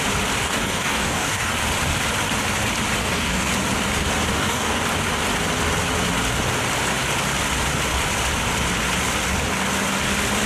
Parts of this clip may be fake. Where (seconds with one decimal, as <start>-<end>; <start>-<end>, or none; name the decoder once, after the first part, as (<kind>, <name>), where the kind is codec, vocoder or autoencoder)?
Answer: 0.4-1.5 (codec, DAC); 3.0-3.5; 4.3-4.8